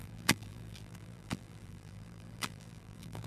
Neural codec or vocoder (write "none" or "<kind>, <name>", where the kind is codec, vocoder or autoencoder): vocoder, BigVGAN v2